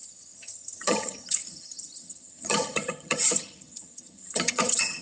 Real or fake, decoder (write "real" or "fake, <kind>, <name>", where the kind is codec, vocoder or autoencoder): fake, vocoder, HiFi-GAN